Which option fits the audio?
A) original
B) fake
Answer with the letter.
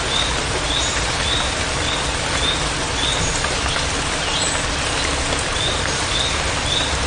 A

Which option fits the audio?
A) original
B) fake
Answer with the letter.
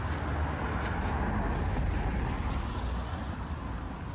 A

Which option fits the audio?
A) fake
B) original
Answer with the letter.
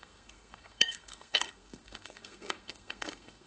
A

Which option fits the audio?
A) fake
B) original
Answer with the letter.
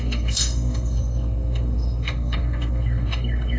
A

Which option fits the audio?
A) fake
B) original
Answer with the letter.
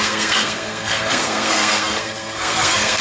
A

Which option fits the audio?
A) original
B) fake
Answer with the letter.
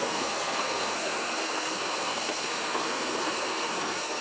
B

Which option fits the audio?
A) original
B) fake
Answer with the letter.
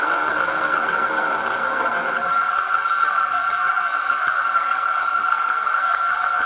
B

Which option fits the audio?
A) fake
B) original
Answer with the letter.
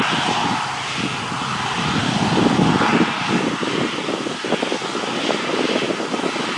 B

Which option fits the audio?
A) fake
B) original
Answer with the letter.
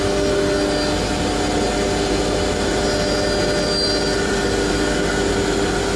B